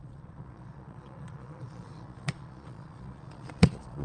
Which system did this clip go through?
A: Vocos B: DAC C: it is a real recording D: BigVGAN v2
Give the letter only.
A